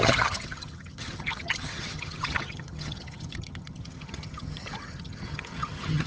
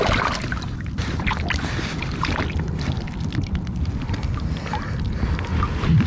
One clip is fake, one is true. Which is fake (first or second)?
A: first